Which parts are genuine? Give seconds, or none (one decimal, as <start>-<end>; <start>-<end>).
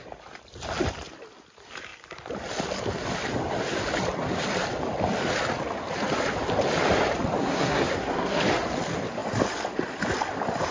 0.0-7.4; 8.4-10.7